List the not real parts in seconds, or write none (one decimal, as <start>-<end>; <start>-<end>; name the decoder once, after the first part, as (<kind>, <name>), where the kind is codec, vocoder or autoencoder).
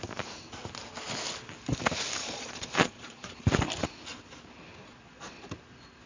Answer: 2.2-3.3 (vocoder, Vocos); 4.8-5.5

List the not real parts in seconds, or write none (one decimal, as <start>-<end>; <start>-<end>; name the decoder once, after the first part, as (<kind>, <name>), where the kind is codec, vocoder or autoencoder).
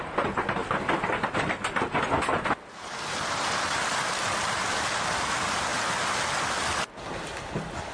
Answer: 0.6-1.5 (vocoder, BigVGAN v2)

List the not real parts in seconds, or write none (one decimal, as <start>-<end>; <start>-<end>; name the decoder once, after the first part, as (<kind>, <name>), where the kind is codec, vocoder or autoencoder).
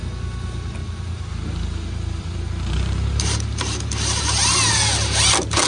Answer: 0.8-4.2 (vocoder, BigVGAN v2)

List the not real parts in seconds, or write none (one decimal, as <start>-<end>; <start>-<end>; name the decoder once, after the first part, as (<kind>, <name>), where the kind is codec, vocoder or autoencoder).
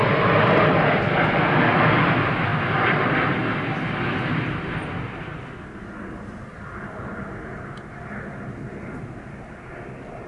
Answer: none